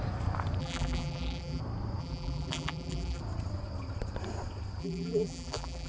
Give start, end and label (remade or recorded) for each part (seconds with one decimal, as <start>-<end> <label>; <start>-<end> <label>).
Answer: 0.0-0.6 recorded; 0.6-1.6 remade; 1.6-2.0 recorded; 2.0-3.2 remade; 3.2-4.8 recorded; 4.8-5.9 remade